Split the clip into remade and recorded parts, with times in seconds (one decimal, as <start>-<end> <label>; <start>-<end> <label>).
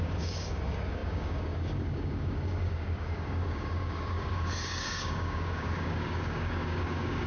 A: 0.0-7.3 remade